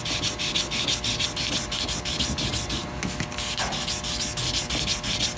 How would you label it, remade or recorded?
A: recorded